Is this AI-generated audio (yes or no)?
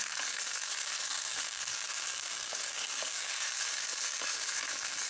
yes